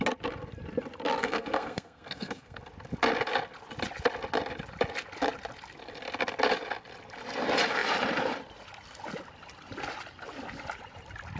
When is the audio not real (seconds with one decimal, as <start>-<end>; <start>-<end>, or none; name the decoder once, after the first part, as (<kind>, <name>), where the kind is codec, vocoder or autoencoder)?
1.2-2.6 (codec, SNAC)